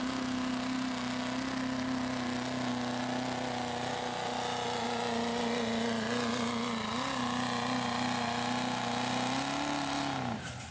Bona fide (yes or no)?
yes